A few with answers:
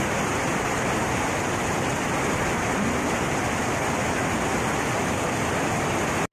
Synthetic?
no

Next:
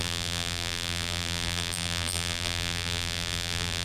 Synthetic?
yes